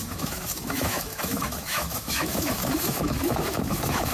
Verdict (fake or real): fake